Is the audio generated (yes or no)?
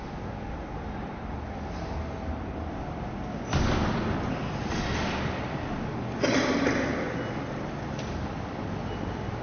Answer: no